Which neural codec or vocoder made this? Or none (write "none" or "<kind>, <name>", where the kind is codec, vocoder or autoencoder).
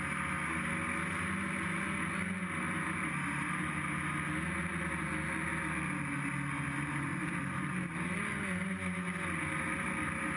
none